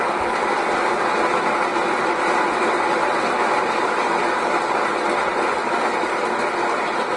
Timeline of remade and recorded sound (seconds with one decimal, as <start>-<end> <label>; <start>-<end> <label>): 0.0-7.2 recorded